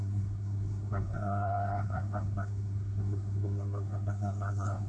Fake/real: fake